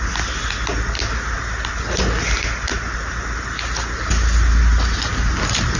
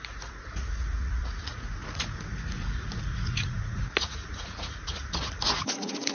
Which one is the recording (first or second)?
first